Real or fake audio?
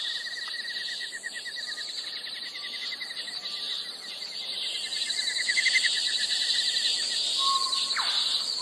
real